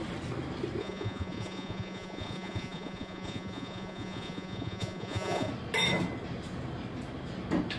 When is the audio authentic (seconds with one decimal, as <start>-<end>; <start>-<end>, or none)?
0.0-0.8; 5.5-7.8